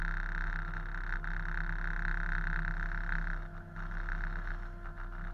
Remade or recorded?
recorded